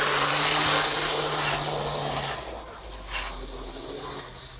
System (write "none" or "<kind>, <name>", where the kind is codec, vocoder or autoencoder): none